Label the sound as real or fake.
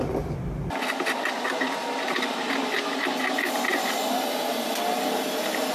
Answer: real